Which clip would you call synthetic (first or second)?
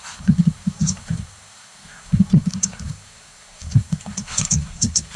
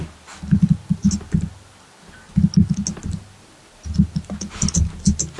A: first